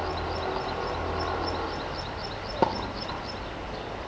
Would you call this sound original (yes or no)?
yes